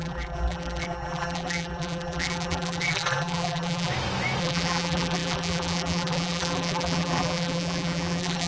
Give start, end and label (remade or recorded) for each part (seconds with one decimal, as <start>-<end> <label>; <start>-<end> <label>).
0.0-3.9 remade; 3.9-4.4 recorded; 4.4-8.5 remade